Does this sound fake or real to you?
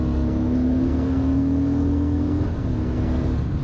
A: fake